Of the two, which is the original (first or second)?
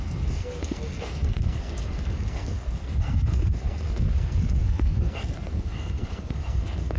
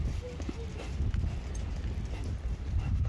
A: second